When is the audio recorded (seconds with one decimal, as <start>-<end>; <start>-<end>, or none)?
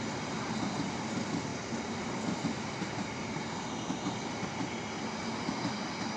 0.0-6.2